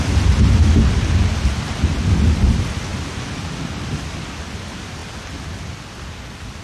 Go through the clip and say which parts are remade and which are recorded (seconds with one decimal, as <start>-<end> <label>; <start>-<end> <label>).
0.0-6.6 recorded